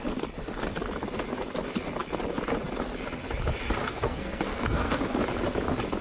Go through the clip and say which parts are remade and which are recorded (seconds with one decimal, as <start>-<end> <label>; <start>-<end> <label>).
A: 0.0-3.8 recorded; 3.8-5.0 remade; 5.0-6.0 recorded

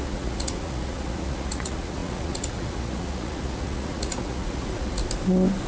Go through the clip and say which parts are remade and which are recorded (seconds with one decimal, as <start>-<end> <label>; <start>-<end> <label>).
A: 0.0-5.0 remade; 5.0-5.7 recorded

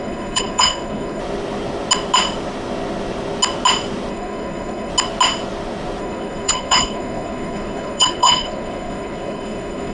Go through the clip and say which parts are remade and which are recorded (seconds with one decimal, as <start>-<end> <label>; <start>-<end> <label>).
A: 0.0-1.2 remade; 1.2-4.1 recorded; 4.1-4.9 remade; 4.9-6.0 recorded; 6.0-9.9 remade

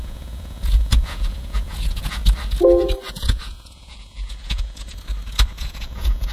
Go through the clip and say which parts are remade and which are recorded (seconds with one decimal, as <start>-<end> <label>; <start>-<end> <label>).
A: 0.0-2.2 remade; 2.2-3.1 recorded; 3.1-4.9 remade; 4.9-5.6 recorded; 5.6-6.3 remade

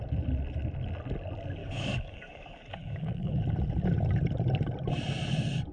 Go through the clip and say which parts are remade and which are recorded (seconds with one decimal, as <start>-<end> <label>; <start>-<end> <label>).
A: 0.0-1.6 recorded; 1.6-3.4 remade; 3.4-5.7 recorded